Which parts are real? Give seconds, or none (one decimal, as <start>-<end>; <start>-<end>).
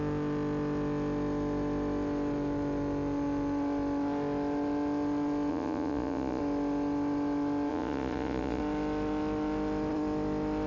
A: 0.0-5.5; 6.4-7.7; 8.6-10.7